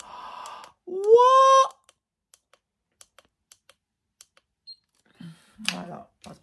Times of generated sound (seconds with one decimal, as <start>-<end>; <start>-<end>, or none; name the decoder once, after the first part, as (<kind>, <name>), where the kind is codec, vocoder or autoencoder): none